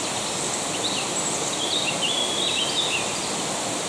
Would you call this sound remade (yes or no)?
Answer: no